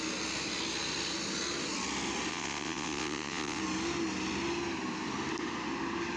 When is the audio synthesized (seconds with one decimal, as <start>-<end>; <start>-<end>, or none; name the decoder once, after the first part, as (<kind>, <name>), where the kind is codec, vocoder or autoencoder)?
2.3-3.6 (vocoder, WaveNeXt)